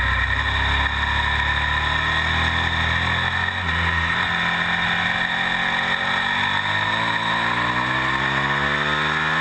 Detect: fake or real real